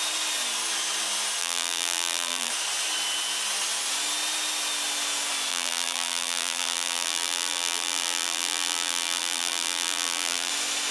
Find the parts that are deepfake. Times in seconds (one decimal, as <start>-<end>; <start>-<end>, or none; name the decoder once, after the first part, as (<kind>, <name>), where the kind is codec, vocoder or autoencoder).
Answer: 1.4-2.5 (vocoder, BigVGAN v2); 5.5-10.5